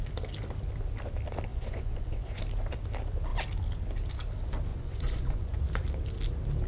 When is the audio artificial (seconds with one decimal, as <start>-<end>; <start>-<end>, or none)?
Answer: 1.5-2.4; 4.7-5.6